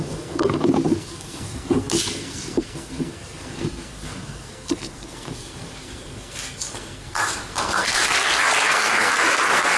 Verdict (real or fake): fake